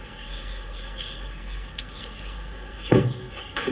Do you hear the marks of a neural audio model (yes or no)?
yes